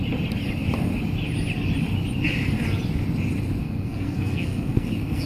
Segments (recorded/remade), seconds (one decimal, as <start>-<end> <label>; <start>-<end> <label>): 0.0-3.6 recorded; 3.6-5.3 remade

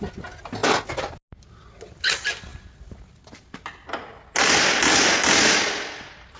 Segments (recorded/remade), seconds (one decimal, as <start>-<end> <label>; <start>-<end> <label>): 0.0-6.4 recorded

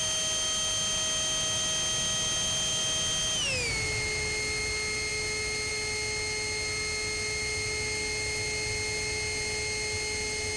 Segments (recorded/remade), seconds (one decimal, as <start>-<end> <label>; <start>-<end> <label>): 0.0-10.6 recorded

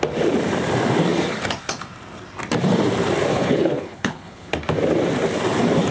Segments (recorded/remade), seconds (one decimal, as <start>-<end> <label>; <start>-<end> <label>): 0.0-3.3 recorded; 3.3-4.5 remade; 4.5-5.9 recorded

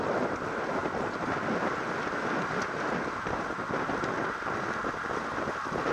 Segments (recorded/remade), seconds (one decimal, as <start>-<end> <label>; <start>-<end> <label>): 0.0-5.9 recorded

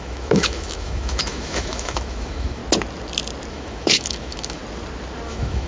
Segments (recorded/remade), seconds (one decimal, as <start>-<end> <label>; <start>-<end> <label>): 0.0-2.6 remade; 2.6-3.5 recorded; 3.5-4.6 remade; 4.6-5.3 recorded; 5.3-5.7 remade

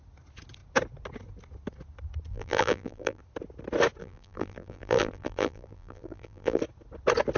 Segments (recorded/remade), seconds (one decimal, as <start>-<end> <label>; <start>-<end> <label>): 0.0-2.3 recorded; 2.3-3.2 remade; 3.2-4.0 recorded; 4.0-6.6 remade; 6.6-7.4 recorded

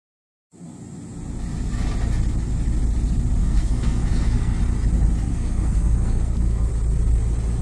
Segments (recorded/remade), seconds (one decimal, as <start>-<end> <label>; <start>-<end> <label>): 0.0-3.4 recorded; 3.4-4.6 remade; 4.6-5.3 recorded; 5.3-6.7 remade; 6.7-7.6 recorded